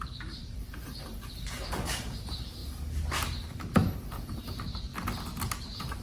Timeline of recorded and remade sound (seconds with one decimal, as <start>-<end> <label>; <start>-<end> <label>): 0.0-2.6 remade; 2.6-4.1 recorded; 4.1-4.9 remade; 4.9-5.6 recorded; 5.6-6.0 remade